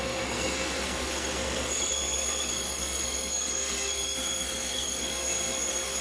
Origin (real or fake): fake